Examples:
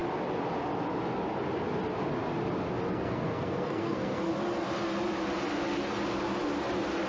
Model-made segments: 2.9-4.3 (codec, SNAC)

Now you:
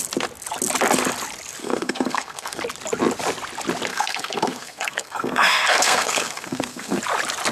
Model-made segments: 1.6-2.6 (codec, SNAC); 3.9-7.0